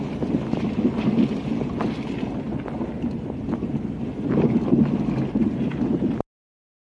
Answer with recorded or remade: recorded